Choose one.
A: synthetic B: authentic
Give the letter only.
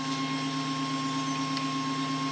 B